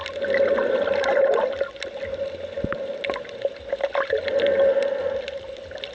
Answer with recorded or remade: recorded